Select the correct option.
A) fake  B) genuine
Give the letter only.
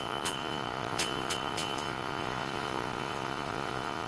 A